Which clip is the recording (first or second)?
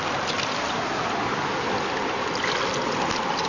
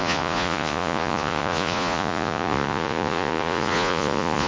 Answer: first